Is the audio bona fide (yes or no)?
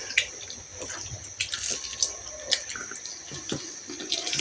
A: yes